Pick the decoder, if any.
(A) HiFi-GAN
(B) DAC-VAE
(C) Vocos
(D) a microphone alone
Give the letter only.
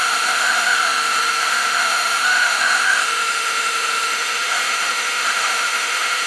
B